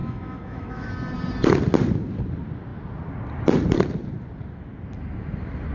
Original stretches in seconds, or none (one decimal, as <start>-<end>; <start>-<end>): 0.9-5.7